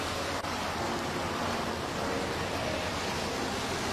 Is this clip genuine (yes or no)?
yes